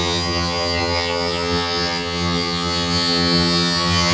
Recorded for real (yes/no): no